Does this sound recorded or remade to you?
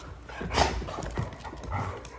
recorded